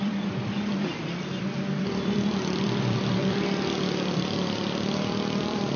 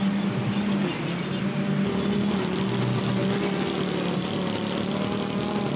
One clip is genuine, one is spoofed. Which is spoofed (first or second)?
first